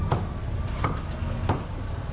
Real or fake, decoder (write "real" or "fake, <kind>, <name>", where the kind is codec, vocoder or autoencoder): real